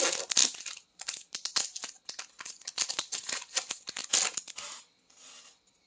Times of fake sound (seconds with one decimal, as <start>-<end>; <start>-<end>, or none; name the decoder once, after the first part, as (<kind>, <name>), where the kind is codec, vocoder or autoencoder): none